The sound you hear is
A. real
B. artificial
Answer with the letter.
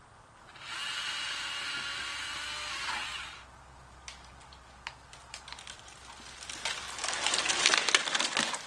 A